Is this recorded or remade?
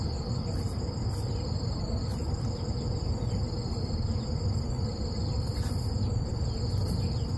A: recorded